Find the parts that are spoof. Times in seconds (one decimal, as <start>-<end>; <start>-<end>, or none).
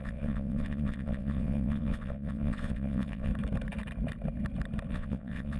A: 0.0-3.3; 4.9-5.6